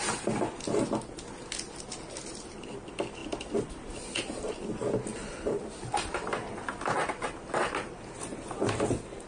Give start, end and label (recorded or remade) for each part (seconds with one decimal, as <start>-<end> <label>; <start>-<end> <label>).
0.0-9.3 recorded